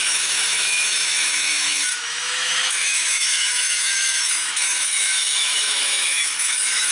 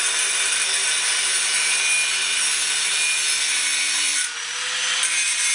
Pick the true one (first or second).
second